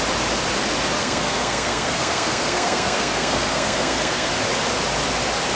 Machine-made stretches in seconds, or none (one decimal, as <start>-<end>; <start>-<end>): 1.0-4.3